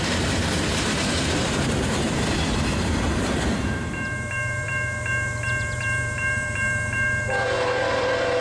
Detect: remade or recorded remade